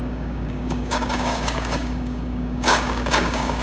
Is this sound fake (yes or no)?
yes